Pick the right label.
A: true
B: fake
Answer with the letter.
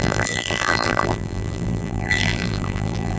B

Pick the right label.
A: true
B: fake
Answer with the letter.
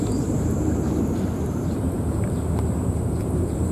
B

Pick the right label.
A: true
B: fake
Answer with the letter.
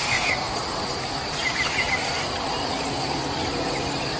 B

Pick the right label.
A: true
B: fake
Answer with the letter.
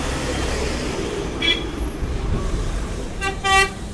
B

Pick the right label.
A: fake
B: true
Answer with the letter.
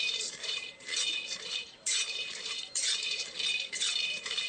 A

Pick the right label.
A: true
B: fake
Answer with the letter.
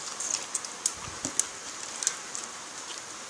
A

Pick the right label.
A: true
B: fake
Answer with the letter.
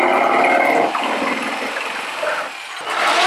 A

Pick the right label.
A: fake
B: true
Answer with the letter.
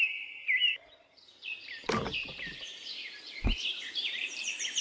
A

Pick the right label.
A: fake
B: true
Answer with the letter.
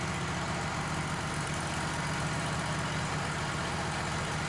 B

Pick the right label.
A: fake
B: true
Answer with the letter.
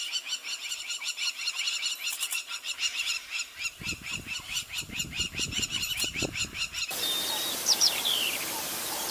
A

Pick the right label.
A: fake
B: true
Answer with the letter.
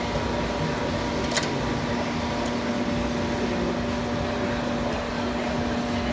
B